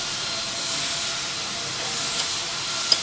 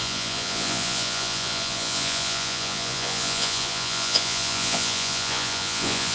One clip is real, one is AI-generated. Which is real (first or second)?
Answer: first